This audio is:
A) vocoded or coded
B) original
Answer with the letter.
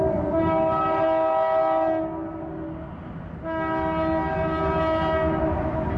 B